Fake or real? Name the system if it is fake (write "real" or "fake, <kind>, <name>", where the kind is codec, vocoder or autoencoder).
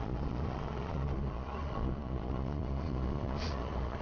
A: fake, vocoder, Vocos